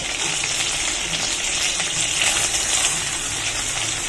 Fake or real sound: real